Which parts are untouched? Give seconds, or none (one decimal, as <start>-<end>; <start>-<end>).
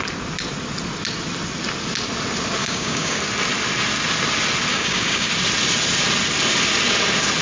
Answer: 0.0-2.6; 3.2-4.7; 5.3-7.4